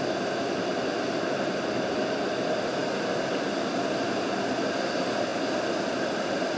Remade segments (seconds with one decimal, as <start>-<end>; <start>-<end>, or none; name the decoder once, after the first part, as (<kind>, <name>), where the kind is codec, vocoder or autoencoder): none

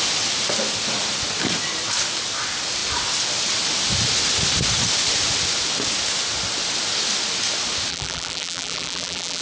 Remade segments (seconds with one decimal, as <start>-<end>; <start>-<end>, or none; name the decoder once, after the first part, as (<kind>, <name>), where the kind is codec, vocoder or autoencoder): 7.9-9.4 (vocoder, BigVGAN v2)

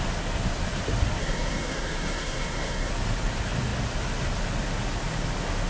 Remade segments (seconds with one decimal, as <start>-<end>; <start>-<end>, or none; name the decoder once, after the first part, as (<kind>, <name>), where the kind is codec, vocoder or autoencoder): 1.2-2.9 (codec, SNAC)

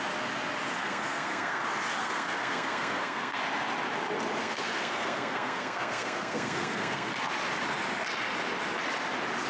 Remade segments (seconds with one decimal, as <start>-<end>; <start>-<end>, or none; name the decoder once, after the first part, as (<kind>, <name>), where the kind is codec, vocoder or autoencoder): 0.8-1.6 (codec, SNAC); 2.0-3.4; 4.4-7.1

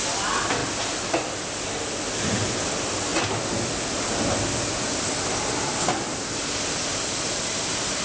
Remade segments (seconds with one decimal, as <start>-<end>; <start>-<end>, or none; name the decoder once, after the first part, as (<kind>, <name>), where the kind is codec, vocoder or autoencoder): 6.1-6.7 (vocoder, BigVGAN v2)